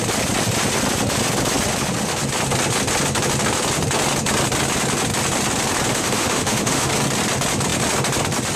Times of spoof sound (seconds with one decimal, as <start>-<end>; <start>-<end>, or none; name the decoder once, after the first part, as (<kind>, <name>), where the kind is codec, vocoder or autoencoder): 5.9-6.9 (autoencoder, DAC-VAE)

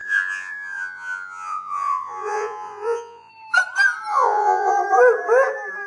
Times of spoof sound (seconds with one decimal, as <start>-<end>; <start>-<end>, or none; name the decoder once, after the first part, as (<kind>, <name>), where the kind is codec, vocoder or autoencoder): 0.0-3.3 (vocoder, Vocos); 4.1-4.7

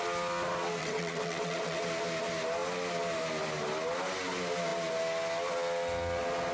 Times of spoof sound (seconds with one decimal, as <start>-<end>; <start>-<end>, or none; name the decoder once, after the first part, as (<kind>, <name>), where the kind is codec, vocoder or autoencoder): 0.8-1.8 (vocoder, WaveNeXt)

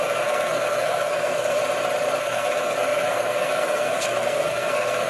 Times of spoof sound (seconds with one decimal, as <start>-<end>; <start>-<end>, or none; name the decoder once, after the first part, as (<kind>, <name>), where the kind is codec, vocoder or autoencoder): 0.0-1.6 (codec, SNAC); 2.2-5.1

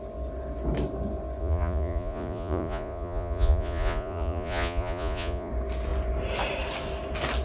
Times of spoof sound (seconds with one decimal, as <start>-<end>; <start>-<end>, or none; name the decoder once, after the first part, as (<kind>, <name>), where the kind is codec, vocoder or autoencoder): 1.4-5.5 (vocoder, Vocos)

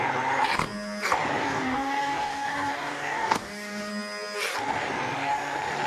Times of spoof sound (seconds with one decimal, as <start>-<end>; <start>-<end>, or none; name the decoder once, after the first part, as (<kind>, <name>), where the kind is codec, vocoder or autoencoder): 1.4-3.9 (codec, DAC)